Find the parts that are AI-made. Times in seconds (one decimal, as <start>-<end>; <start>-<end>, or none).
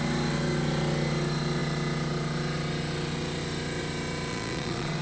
4.3-5.0